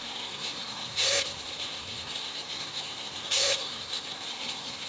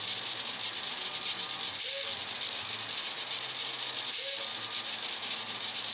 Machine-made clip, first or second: first